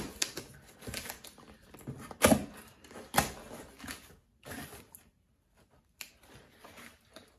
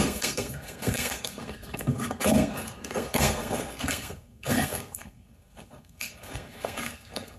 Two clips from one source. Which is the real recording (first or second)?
first